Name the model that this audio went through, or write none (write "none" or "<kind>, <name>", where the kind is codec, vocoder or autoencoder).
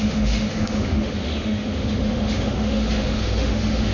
autoencoder, DAC-VAE